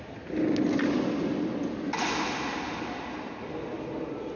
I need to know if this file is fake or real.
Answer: real